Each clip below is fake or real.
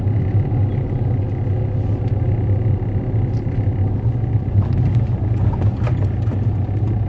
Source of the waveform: real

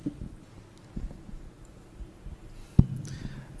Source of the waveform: real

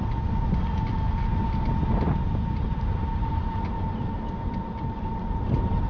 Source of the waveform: real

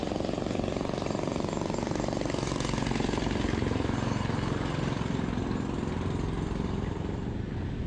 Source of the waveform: real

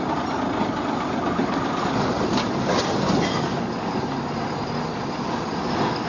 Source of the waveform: real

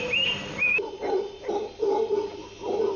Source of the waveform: fake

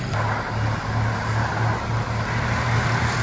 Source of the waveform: real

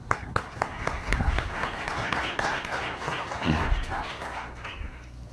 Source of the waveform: fake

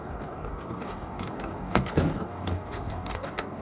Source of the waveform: fake